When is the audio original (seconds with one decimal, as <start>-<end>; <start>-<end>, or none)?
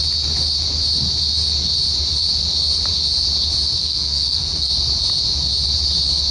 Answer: 0.0-3.8; 4.7-6.3